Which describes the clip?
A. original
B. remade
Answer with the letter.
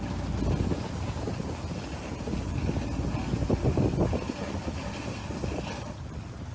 A